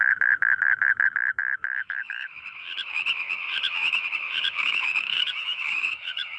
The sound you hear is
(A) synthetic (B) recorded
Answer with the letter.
A